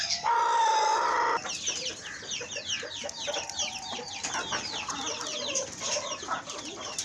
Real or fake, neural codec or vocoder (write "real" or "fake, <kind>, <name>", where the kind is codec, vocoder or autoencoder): real